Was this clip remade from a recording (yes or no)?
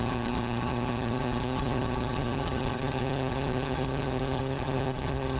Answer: yes